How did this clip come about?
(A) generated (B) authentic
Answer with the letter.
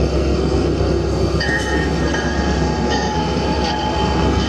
A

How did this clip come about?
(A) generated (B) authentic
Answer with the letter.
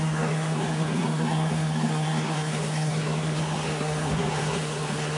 A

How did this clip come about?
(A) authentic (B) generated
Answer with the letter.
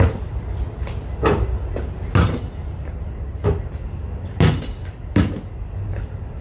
A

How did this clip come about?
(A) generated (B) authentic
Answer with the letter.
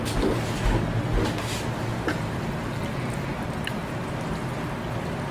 B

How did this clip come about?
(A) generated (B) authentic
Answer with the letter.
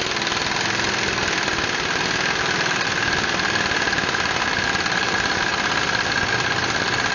B